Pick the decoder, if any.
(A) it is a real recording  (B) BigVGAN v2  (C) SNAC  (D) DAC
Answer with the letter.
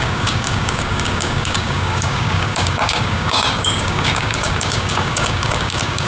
D